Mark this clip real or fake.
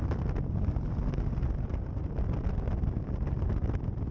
real